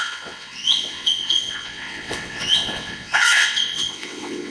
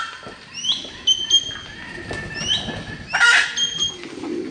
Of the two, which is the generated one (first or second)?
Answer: first